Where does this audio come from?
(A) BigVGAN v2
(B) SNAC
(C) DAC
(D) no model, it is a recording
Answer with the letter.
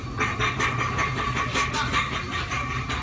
D